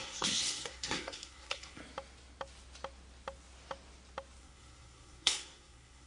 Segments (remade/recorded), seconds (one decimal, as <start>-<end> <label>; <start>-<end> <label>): 0.0-1.8 remade; 1.8-4.4 recorded; 4.4-6.1 remade